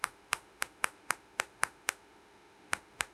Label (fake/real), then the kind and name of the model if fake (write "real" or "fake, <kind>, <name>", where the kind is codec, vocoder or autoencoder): fake, autoencoder, DAC-VAE